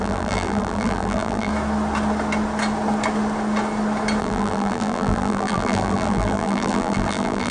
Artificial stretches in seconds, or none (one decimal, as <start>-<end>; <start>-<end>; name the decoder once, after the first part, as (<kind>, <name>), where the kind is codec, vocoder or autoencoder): 0.0-1.5 (vocoder, BigVGAN v2); 4.2-7.5